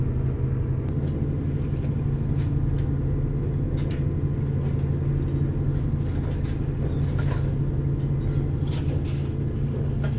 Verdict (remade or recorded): recorded